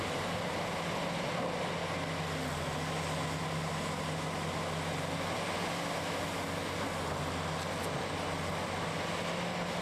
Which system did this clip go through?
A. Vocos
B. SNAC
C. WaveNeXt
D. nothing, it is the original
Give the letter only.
D